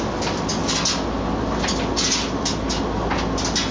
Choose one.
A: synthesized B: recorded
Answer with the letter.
B